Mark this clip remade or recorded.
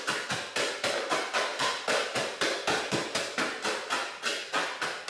recorded